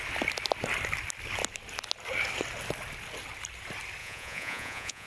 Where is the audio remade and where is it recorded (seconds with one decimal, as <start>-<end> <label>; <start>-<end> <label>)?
0.0-4.0 recorded; 4.0-5.1 remade

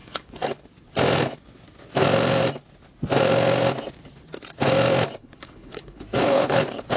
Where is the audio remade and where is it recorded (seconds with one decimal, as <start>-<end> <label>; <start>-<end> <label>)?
0.0-0.6 remade; 0.6-5.2 recorded; 5.2-7.0 remade

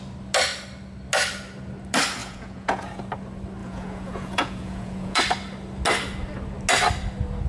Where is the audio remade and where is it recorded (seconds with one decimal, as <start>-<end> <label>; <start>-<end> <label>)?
0.0-2.2 recorded; 2.2-3.0 remade; 3.0-3.6 recorded; 3.6-5.2 remade; 5.2-7.5 recorded